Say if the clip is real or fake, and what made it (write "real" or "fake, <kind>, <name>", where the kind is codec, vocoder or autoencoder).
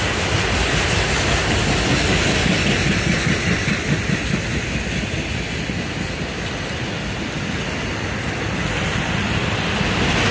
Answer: real